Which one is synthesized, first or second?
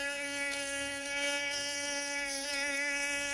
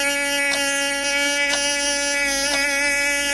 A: first